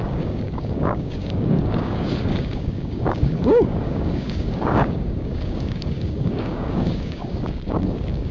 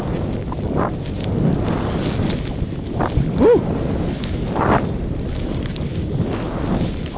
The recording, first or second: second